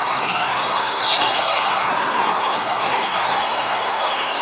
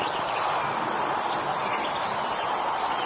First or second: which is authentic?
second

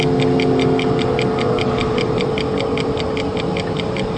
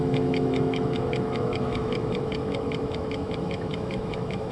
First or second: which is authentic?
first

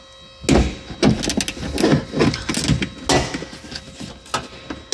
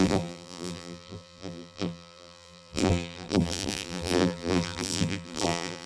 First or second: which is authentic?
first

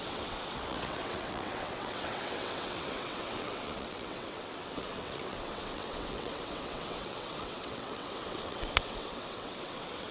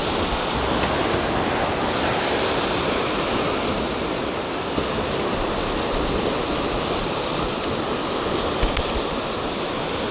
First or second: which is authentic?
second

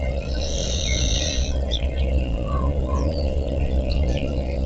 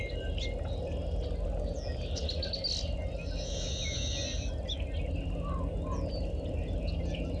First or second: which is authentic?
second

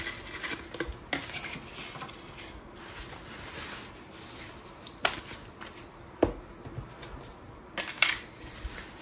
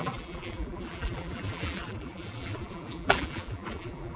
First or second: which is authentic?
first